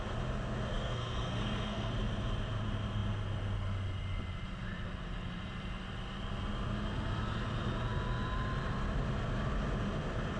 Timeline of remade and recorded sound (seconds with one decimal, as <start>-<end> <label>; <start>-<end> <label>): 0.0-0.7 recorded; 0.7-1.9 remade; 1.9-10.4 recorded